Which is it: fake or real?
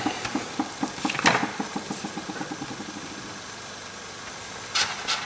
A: real